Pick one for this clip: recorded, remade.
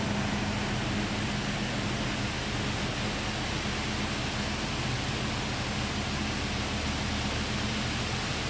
recorded